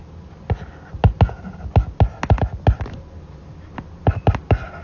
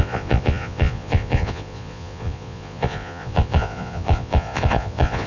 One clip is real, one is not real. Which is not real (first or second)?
second